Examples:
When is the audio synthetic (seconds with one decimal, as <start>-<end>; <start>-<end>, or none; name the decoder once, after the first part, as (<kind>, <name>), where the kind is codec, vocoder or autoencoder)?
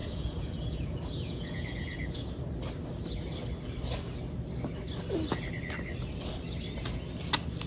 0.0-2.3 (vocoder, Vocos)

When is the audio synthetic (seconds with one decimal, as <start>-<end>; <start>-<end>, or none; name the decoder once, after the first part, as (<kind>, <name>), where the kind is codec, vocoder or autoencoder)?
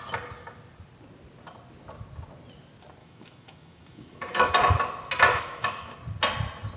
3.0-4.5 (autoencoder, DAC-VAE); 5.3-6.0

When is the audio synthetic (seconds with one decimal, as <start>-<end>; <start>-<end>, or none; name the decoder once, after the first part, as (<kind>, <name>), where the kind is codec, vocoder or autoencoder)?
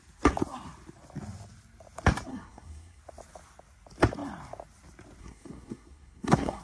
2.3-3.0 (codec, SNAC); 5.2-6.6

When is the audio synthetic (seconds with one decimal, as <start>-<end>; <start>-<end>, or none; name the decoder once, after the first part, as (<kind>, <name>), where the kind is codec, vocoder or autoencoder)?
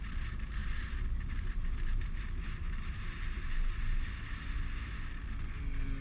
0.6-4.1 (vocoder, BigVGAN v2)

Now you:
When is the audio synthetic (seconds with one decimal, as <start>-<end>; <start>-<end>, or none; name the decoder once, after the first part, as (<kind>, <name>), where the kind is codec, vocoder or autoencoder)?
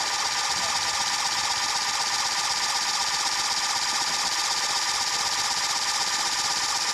none